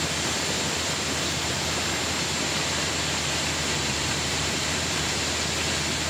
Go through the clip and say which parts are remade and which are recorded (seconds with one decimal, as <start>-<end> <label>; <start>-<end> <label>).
0.0-3.8 recorded; 3.8-5.1 remade; 5.1-6.1 recorded